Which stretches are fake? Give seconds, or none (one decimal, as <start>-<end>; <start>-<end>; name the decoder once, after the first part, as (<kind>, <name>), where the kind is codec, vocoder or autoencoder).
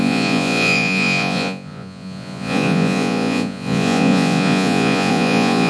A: 0.0-5.7 (vocoder, Vocos)